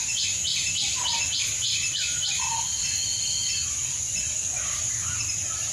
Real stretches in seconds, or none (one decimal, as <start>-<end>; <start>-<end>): 0.0-0.5; 1.2-1.7; 2.4-5.7